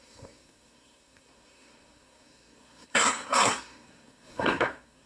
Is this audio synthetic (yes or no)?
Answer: yes